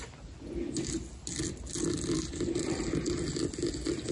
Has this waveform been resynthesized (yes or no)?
no